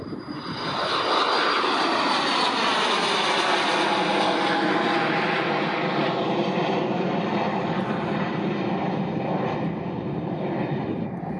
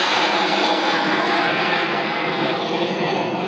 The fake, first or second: second